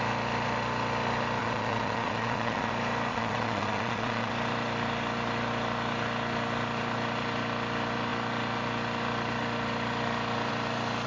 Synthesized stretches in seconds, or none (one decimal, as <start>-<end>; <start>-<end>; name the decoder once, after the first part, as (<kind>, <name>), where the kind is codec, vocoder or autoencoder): 1.4-2.7 (vocoder, Vocos); 3.1-4.3